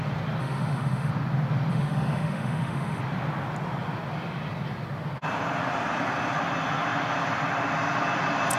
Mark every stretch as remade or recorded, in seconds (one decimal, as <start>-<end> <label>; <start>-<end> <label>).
0.0-0.4 recorded; 0.4-1.1 remade; 1.1-1.7 recorded; 1.7-3.0 remade; 3.0-8.6 recorded